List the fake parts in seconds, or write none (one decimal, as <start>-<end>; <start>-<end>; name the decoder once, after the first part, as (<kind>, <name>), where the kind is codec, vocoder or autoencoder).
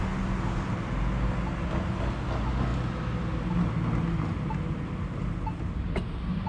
none